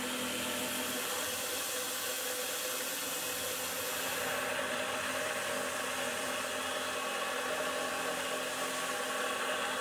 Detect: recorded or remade recorded